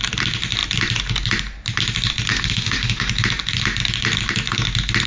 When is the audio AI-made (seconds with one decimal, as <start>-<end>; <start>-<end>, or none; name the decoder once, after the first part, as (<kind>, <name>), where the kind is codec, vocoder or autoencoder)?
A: 2.3-3.1 (autoencoder, DAC-VAE)